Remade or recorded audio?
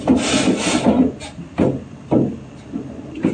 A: recorded